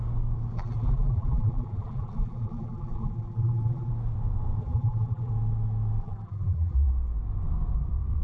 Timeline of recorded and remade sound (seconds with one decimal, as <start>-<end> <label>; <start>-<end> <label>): 0.0-0.5 recorded; 0.5-3.9 remade; 3.9-4.6 recorded; 4.6-5.3 remade; 5.3-6.0 recorded; 6.0-6.9 remade; 6.9-8.2 recorded